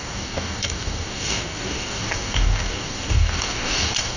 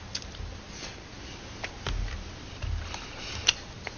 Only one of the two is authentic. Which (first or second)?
second